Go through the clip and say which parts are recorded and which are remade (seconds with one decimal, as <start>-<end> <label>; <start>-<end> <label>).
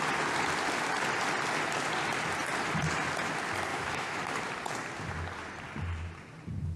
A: 0.0-3.7 recorded; 3.7-4.2 remade; 4.2-6.8 recorded